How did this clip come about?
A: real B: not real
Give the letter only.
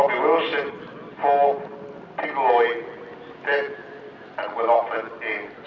A